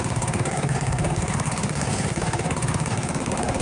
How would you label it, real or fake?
fake